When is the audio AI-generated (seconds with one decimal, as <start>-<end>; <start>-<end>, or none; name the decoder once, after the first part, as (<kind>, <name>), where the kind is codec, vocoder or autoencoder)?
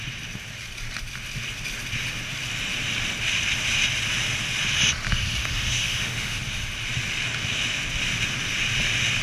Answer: 5.4-6.4 (autoencoder, DAC-VAE)